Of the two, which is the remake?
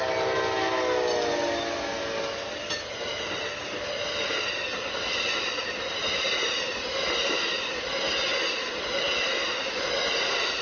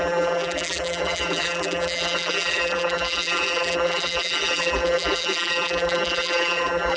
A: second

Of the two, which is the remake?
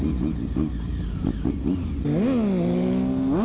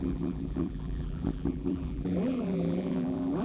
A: second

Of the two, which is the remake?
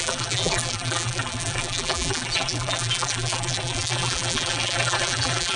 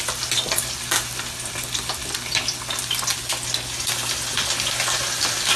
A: first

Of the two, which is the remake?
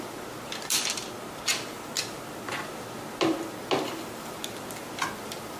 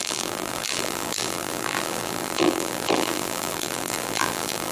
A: second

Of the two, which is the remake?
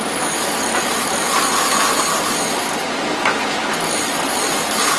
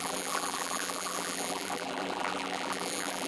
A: second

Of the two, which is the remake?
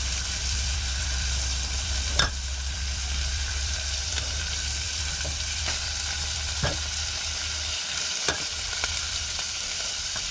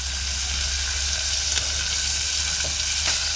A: first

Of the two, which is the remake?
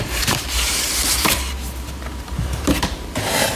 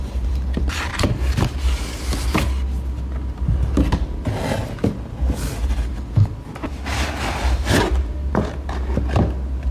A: first